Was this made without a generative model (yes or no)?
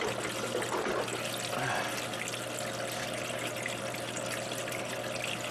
yes